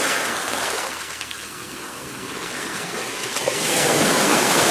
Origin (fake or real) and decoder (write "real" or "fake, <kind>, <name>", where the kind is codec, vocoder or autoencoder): fake, codec, SNAC